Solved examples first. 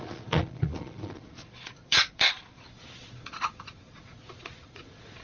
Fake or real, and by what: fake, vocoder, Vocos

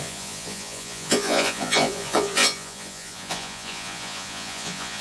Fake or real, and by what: fake, vocoder, Vocos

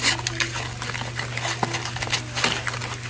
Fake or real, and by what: real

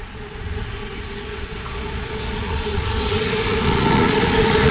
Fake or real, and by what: fake, vocoder, Vocos